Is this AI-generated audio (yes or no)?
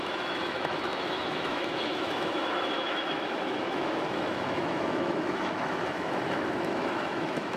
yes